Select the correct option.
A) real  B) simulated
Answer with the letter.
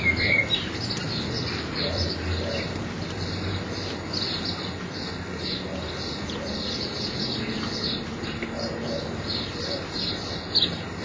A